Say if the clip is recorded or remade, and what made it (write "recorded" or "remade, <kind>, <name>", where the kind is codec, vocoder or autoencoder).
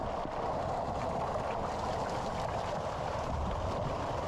recorded